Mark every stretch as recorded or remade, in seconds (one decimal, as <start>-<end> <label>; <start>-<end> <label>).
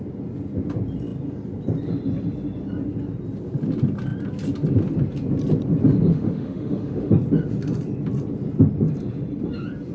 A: 0.0-6.1 recorded; 6.1-7.1 remade; 7.1-9.9 recorded